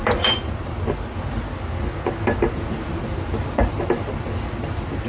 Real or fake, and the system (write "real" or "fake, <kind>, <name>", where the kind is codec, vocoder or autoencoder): real